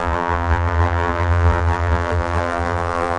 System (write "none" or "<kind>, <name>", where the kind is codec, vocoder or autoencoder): vocoder, BigVGAN v2